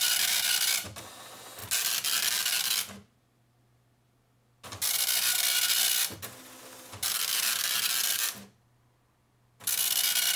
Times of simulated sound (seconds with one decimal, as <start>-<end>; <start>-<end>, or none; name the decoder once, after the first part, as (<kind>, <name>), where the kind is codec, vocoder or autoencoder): none